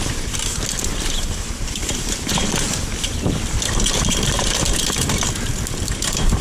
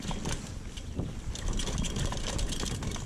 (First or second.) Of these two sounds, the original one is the second